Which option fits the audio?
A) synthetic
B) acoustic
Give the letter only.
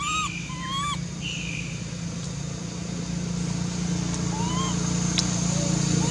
B